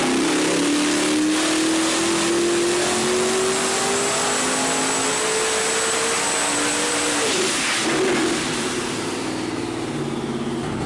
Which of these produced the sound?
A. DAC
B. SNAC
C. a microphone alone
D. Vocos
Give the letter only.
C